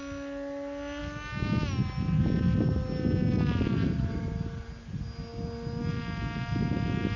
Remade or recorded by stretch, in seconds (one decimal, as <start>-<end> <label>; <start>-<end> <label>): 0.0-7.2 recorded